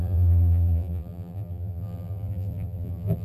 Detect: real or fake fake